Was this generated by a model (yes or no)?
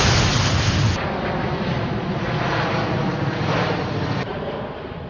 no